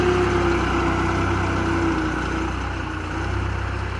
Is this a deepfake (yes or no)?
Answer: no